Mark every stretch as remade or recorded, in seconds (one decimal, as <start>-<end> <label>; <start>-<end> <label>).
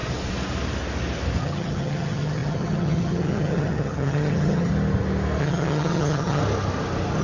0.0-1.4 recorded; 1.4-4.7 remade; 4.7-5.4 recorded; 5.4-6.4 remade; 6.4-7.2 recorded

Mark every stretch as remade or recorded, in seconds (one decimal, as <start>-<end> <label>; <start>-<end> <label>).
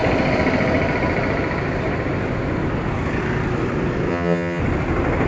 0.0-4.1 recorded; 4.1-4.6 remade; 4.6-5.3 recorded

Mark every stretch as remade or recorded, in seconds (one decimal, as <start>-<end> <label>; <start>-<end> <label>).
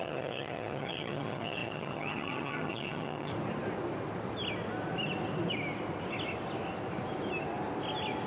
0.0-3.3 remade; 3.3-8.3 recorded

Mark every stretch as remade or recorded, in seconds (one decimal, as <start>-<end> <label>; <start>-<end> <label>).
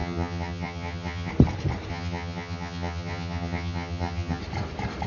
0.0-1.3 remade; 1.3-1.9 recorded; 1.9-4.4 remade; 4.4-5.1 recorded